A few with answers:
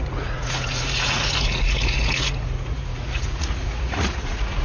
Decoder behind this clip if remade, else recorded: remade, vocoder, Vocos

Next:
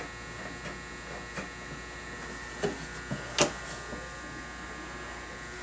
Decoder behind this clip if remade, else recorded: recorded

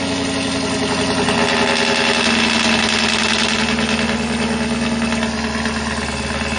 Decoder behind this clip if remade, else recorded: recorded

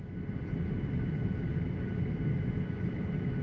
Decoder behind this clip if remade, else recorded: recorded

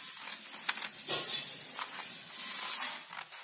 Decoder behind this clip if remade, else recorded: recorded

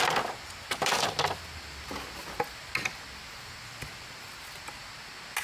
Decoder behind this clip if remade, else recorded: recorded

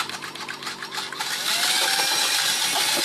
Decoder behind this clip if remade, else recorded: recorded